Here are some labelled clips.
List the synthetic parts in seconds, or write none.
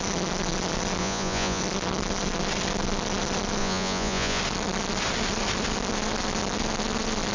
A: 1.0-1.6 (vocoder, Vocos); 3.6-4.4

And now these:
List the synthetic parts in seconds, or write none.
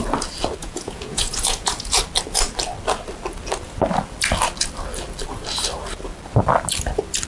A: 0.6-2.0 (vocoder, Vocos)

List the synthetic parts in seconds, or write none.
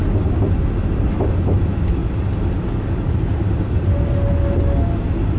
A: none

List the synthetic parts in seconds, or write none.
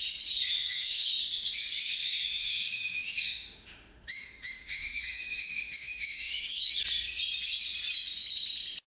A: 0.5-1.1 (autoencoder, DAC-VAE); 2.0-6.7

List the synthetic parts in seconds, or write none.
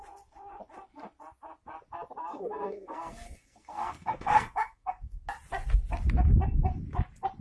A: 2.3-5.2 (codec, SNAC)